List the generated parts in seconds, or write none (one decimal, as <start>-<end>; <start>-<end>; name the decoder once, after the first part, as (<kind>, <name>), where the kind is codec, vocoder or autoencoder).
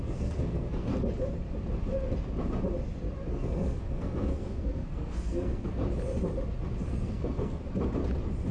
0.0-0.9 (codec, SNAC); 3.3-5.8; 6.9-7.6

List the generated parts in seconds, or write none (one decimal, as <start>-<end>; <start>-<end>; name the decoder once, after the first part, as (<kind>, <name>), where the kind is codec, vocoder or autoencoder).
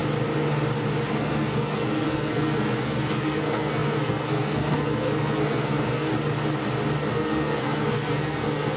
1.1-6.1 (codec, SNAC); 7.1-8.8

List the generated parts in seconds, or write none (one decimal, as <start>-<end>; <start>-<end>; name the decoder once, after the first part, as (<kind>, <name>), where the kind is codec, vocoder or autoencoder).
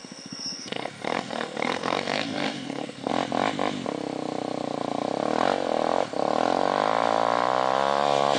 0.0-3.1 (codec, SNAC)